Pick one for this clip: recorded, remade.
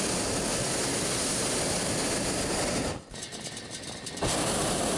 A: recorded